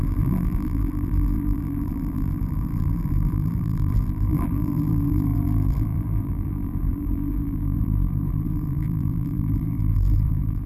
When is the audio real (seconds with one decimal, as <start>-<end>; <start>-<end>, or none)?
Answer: none